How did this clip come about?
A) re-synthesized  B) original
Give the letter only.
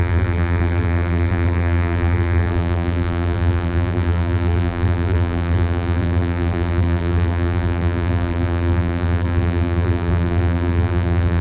A